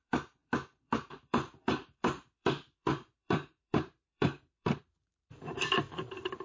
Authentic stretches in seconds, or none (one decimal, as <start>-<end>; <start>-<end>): none